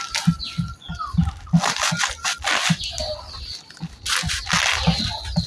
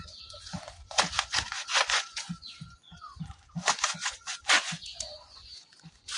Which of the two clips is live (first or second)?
first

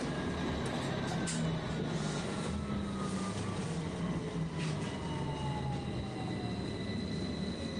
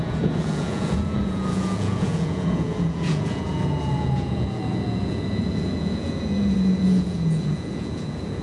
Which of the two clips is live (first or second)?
first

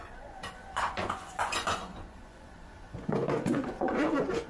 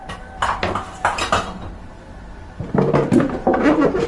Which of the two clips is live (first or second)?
second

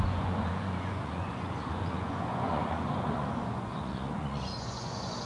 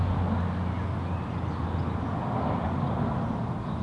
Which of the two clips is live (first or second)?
second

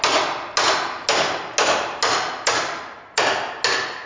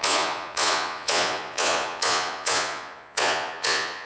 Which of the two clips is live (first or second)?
first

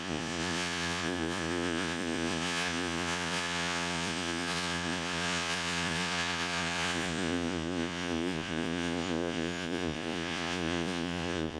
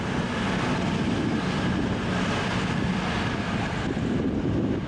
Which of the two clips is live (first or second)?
second